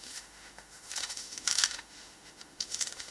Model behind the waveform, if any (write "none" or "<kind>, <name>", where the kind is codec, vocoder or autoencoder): autoencoder, DAC-VAE